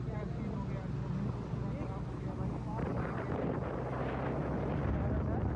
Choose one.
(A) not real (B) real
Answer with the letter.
B